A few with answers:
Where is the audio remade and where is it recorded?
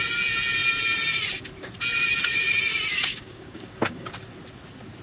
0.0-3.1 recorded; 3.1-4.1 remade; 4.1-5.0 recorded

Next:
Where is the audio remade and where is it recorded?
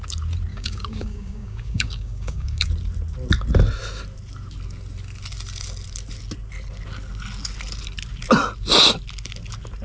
0.0-0.5 recorded; 0.5-2.7 remade; 2.7-9.8 recorded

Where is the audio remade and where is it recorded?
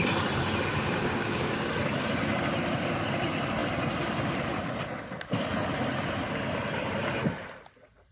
0.0-0.7 recorded; 0.7-1.7 remade; 1.7-8.1 recorded